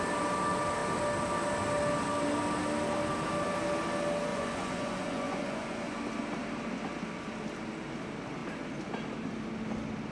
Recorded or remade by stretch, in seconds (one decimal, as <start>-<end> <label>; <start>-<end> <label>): 0.0-4.3 recorded; 4.3-6.0 remade; 6.0-10.1 recorded